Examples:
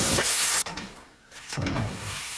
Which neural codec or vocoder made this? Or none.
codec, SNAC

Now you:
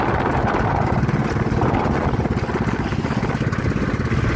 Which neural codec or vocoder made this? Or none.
none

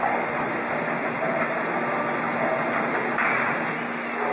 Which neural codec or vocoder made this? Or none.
none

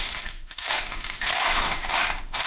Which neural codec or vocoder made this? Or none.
autoencoder, DAC-VAE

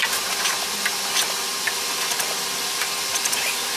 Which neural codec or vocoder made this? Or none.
vocoder, BigVGAN v2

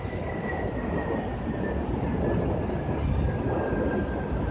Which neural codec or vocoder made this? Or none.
none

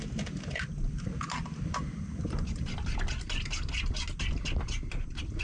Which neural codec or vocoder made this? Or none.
none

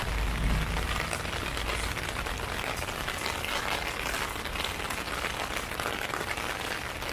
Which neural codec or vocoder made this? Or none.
none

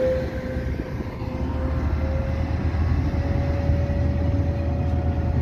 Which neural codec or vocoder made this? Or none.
none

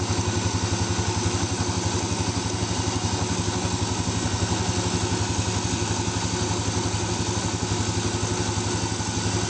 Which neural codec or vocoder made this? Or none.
none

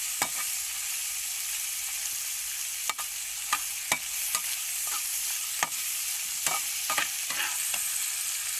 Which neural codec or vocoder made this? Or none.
none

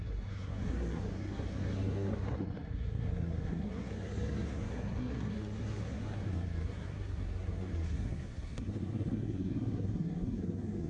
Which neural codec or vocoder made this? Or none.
codec, SNAC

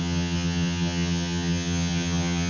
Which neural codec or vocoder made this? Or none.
vocoder, HiFi-GAN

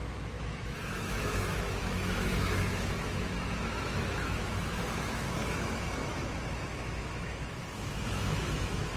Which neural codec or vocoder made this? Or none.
autoencoder, DAC-VAE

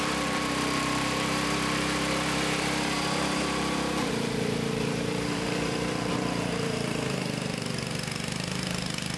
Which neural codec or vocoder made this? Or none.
vocoder, BigVGAN v2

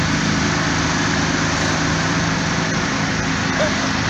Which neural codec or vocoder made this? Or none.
none